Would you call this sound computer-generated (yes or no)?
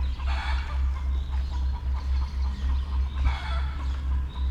no